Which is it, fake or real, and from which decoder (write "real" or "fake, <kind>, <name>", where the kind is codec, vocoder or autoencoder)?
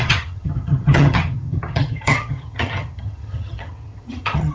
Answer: fake, vocoder, HiFi-GAN